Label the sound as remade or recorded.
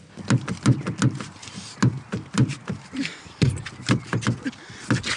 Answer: recorded